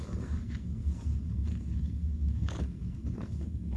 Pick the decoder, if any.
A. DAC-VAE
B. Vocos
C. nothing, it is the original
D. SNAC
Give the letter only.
D